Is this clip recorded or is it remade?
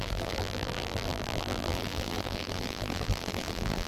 remade